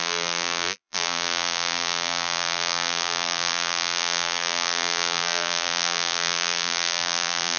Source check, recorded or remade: remade